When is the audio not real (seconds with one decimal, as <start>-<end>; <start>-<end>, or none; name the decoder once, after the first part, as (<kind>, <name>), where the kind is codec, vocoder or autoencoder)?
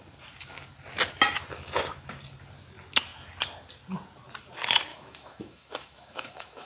4.9-6.7 (autoencoder, DAC-VAE)